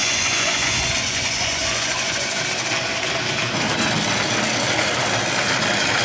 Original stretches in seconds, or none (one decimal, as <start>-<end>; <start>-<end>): 2.4-6.0